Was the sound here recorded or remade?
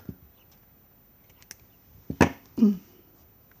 recorded